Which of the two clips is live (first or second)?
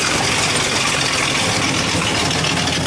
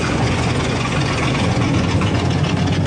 first